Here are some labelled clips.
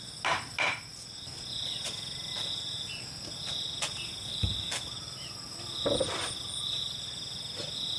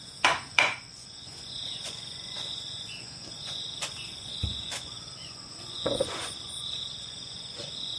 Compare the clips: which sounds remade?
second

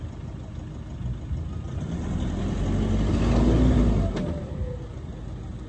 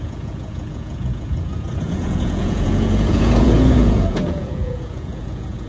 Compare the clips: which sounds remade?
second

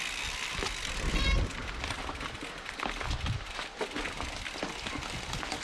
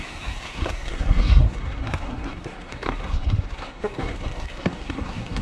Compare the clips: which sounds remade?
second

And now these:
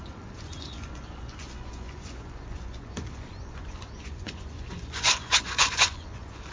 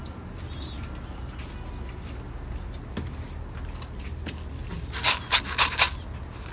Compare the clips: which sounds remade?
first